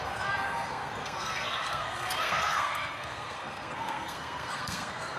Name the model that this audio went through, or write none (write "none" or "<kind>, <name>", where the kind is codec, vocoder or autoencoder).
codec, SNAC